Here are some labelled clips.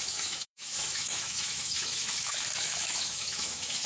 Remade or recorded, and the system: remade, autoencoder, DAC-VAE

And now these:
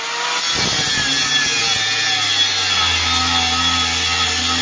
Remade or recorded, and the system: recorded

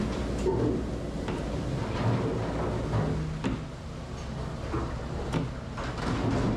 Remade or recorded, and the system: recorded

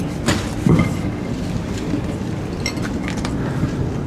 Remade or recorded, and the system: recorded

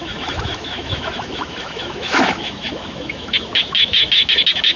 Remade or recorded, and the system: remade, autoencoder, DAC-VAE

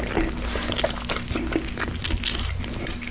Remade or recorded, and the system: recorded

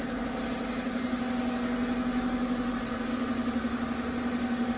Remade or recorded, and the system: recorded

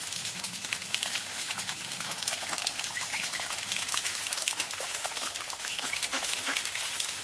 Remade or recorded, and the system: remade, autoencoder, DAC-VAE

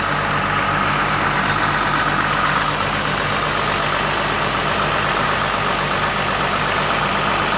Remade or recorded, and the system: recorded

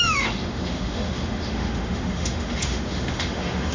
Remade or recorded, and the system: remade, autoencoder, DAC-VAE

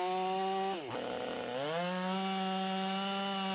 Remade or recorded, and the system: recorded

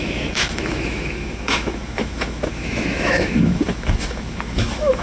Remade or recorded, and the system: remade, autoencoder, DAC-VAE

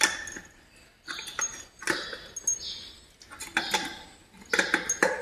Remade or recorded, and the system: recorded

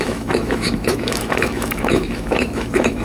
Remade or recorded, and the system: remade, autoencoder, DAC-VAE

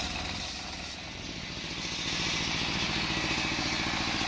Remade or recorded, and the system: recorded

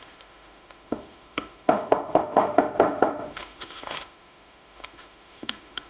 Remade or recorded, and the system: remade, autoencoder, DAC-VAE